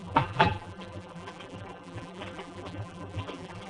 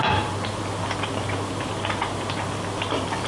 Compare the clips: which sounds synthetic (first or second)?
first